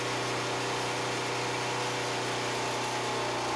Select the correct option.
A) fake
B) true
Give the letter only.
B